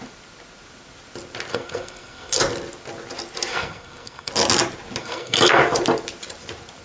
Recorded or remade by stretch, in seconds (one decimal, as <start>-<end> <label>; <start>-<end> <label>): 0.0-1.5 recorded; 1.5-2.4 remade; 2.4-3.5 recorded; 3.5-4.3 remade; 4.3-5.0 recorded; 5.0-5.6 remade; 5.6-6.8 recorded